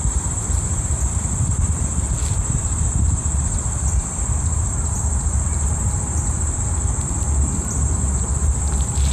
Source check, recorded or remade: remade